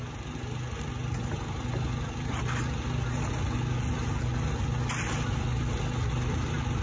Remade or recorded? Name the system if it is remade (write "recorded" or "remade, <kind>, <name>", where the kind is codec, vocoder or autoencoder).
recorded